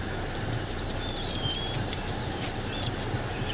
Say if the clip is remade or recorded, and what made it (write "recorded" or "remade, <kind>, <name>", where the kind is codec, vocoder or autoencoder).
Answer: remade, vocoder, BigVGAN v2